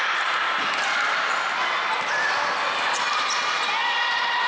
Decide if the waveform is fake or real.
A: real